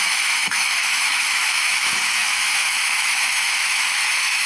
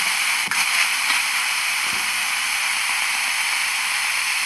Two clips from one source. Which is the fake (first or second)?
first